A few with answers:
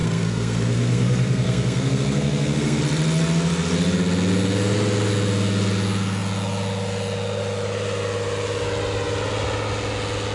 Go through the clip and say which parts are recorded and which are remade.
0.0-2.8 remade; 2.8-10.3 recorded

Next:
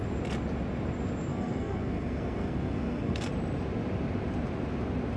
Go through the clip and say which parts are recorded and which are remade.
0.0-1.3 recorded; 1.3-3.3 remade; 3.3-5.2 recorded